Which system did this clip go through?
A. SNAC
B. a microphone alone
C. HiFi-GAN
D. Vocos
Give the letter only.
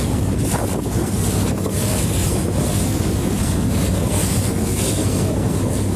A